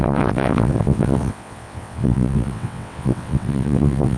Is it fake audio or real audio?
fake